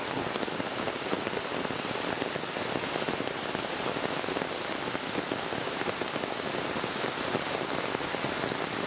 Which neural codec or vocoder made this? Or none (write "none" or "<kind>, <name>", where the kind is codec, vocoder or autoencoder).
none